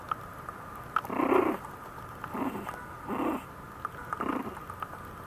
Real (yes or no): yes